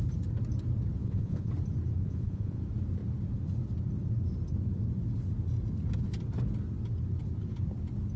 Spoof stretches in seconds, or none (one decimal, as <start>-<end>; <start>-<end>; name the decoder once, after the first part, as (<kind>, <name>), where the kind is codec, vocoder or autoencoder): 1.0-1.5 (vocoder, Vocos); 2.0-2.6